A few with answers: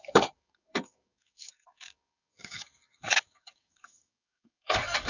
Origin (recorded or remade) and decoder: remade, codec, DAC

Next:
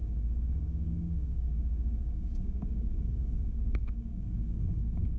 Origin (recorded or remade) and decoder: remade, codec, DAC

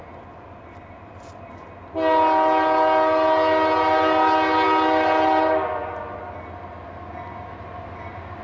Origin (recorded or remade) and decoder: recorded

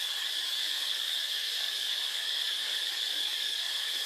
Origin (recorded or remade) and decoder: remade, codec, DAC